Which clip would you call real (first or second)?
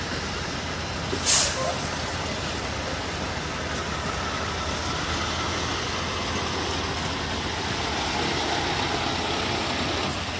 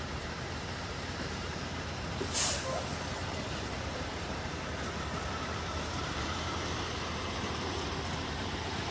first